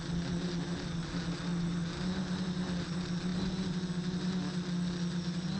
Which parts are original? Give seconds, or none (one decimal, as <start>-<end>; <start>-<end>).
0.0-5.6